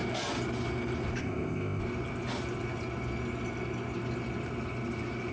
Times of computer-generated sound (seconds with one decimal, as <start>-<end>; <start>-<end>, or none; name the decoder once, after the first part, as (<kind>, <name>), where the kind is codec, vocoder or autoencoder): 1.2-1.8 (codec, ZipCodec)